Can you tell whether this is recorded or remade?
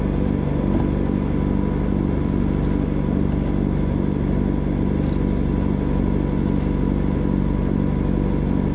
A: recorded